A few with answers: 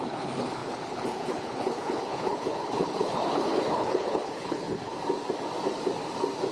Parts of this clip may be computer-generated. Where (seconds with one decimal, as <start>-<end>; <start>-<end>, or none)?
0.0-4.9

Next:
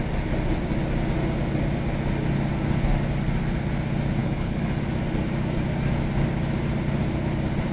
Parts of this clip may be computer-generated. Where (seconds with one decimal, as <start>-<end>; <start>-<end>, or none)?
4.2-4.8

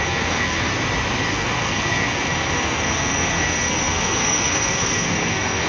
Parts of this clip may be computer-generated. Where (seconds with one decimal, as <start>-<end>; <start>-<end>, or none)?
0.0-0.7; 1.3-5.7

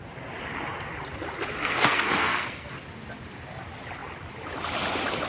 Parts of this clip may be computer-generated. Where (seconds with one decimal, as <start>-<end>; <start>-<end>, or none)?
1.6-2.7

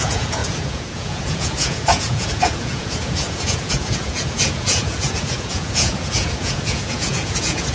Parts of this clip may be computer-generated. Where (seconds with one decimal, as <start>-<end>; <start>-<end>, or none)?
0.0-7.7

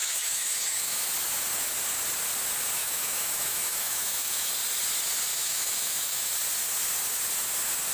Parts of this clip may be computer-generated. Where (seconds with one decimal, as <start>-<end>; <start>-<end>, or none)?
0.0-1.1; 2.8-4.5; 5.3-6.3